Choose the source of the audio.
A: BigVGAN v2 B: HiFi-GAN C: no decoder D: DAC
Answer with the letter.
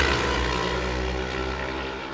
C